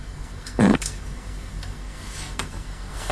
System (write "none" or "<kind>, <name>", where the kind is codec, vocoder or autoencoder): codec, SNAC